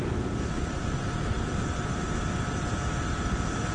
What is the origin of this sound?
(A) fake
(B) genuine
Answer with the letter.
B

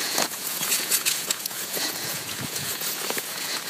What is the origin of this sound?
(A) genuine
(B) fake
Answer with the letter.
B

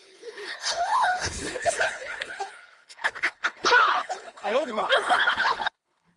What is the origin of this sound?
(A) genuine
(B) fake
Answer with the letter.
B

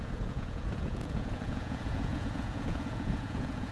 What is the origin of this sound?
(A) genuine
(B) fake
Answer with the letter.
B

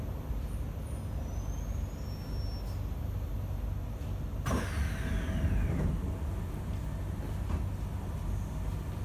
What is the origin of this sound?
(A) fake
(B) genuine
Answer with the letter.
B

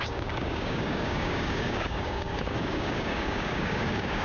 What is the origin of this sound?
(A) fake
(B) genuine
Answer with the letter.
A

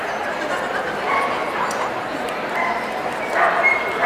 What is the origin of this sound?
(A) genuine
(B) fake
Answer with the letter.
A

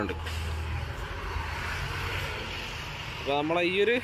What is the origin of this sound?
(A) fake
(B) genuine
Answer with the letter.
B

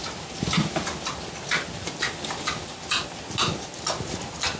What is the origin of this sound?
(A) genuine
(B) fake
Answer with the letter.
A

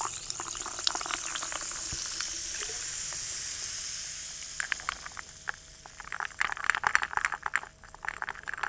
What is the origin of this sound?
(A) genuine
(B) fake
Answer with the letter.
A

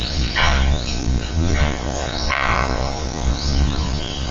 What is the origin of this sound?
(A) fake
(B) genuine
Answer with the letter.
A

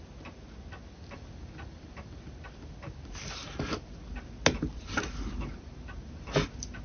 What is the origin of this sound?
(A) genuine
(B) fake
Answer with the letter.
A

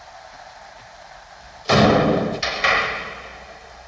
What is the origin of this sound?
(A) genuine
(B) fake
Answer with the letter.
A